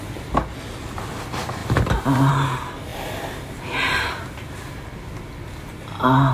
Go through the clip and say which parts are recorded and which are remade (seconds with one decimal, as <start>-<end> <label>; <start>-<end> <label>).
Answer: 0.0-1.6 recorded; 1.6-2.3 remade; 2.3-2.9 recorded; 2.9-3.7 remade; 3.7-6.3 recorded